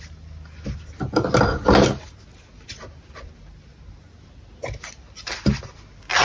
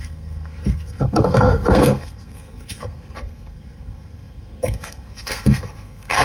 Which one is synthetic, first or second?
second